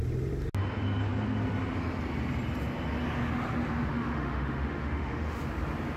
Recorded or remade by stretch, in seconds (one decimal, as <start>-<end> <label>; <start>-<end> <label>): 0.0-3.9 recorded; 3.9-5.4 remade; 5.4-6.0 recorded